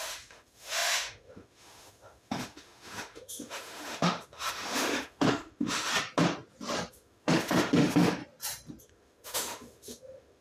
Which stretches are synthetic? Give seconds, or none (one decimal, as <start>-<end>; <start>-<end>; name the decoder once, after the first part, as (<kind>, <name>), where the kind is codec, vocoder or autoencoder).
0.0-5.9 (autoencoder, DAC-VAE); 6.9-8.2; 8.8-10.4